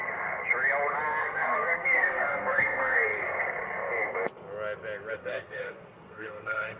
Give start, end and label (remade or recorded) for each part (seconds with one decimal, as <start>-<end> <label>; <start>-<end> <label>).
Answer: 0.0-1.2 recorded; 1.2-3.1 remade; 3.1-5.1 recorded; 5.1-6.8 remade

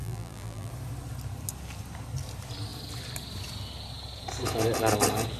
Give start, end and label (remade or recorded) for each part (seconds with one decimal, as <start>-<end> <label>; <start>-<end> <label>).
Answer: 0.0-0.7 remade; 0.7-5.4 recorded

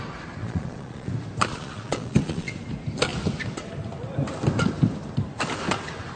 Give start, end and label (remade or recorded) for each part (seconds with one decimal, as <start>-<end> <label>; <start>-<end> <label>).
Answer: 0.0-0.4 recorded; 0.4-1.1 remade; 1.1-1.5 recorded; 1.5-2.5 remade; 2.5-6.2 recorded

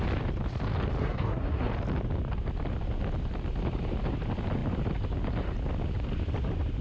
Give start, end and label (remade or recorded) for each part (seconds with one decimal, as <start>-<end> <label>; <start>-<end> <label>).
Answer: 0.0-1.0 recorded; 1.0-1.7 remade; 1.7-6.8 recorded

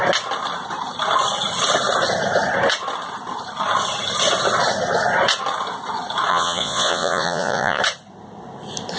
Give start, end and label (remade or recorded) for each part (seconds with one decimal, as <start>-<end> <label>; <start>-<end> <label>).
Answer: 0.0-6.3 recorded; 6.3-7.8 remade; 7.8-9.0 recorded